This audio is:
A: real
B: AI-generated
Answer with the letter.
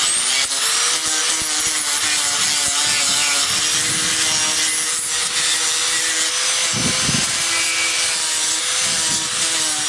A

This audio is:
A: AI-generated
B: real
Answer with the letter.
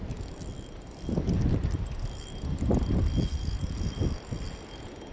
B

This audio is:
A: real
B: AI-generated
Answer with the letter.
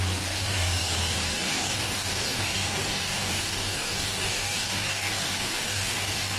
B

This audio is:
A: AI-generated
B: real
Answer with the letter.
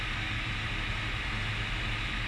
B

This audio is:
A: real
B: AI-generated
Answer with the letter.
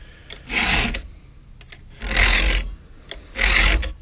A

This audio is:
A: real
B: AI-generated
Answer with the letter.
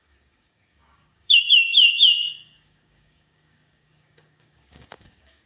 B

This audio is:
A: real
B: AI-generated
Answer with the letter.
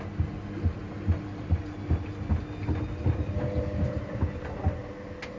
A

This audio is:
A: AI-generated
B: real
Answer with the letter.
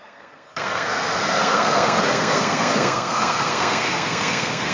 A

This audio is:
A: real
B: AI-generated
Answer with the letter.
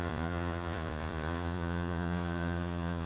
B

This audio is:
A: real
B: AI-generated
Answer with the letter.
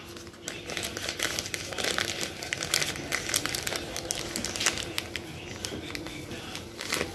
A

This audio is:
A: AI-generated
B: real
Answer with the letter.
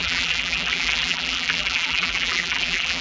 A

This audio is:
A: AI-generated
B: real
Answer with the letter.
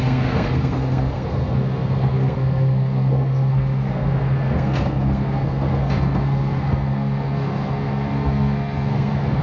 A